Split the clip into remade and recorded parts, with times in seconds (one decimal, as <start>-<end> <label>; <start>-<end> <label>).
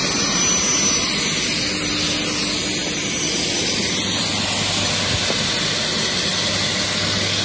0.0-7.4 recorded